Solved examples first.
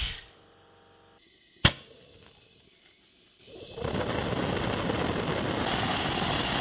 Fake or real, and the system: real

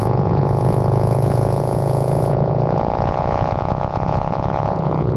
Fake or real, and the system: fake, vocoder, Vocos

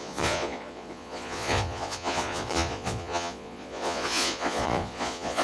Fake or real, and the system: fake, vocoder, Vocos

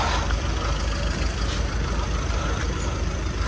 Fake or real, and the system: real